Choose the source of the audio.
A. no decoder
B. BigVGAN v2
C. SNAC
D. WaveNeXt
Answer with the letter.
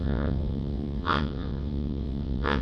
D